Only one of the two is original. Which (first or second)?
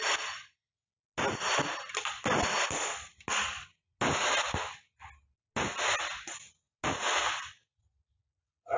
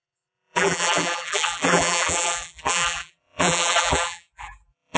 first